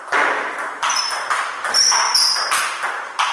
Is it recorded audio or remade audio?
recorded